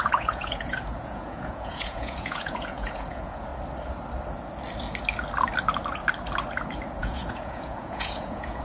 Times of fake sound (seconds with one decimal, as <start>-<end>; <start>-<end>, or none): 0.0-3.5; 7.0-8.6